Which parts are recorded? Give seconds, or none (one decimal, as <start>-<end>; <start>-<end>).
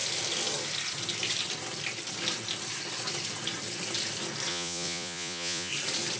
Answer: 0.0-4.5; 5.7-6.2